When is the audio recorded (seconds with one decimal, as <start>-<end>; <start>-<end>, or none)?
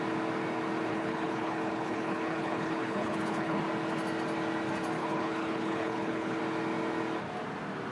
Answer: 0.0-0.9; 3.6-5.0; 6.4-7.9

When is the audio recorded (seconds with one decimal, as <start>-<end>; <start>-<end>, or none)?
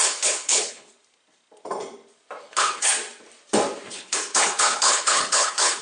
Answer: 0.9-2.4; 2.9-3.9